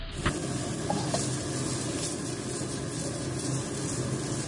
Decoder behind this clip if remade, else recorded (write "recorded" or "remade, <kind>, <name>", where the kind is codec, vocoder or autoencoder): recorded